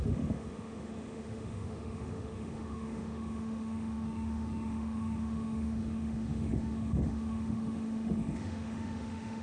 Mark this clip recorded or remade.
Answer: remade